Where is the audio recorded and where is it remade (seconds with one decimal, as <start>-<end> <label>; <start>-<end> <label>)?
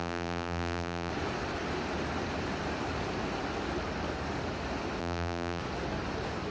0.0-1.1 remade; 1.1-5.0 recorded; 5.0-5.6 remade; 5.6-6.5 recorded